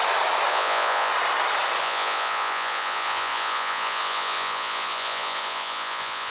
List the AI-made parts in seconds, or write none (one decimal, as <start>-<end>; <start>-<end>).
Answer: 0.5-1.1; 1.8-6.3